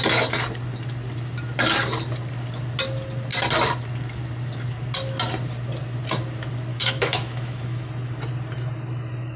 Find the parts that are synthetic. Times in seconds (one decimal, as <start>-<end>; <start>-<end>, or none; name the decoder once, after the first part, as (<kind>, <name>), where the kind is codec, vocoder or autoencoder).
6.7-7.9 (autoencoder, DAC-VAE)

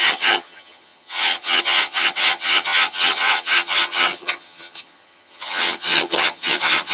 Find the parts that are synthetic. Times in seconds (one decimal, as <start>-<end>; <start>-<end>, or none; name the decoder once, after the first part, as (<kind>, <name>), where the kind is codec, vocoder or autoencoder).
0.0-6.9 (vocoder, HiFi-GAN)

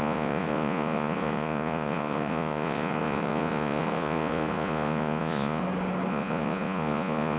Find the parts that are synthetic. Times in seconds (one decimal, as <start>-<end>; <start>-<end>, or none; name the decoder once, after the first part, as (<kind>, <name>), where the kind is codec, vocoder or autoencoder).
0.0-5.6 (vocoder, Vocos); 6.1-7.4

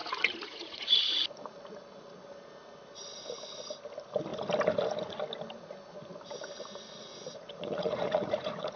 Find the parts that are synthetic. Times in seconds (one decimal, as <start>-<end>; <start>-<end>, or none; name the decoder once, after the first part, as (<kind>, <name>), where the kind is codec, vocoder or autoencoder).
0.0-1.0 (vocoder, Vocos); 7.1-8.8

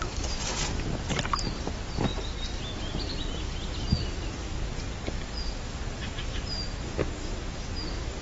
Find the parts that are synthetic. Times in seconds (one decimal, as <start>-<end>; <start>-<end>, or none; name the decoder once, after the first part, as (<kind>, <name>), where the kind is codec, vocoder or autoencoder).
none

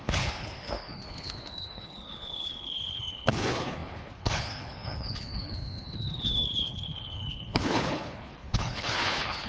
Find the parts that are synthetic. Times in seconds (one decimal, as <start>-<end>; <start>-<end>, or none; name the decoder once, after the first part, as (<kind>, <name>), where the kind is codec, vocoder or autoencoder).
0.0-9.5 (codec, HILCodec)